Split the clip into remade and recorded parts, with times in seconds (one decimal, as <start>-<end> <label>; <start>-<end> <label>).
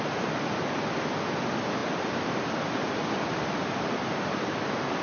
0.0-5.0 recorded